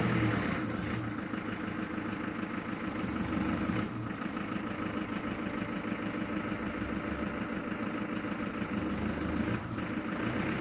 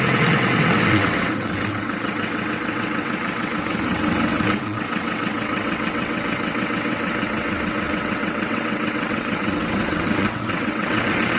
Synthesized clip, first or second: second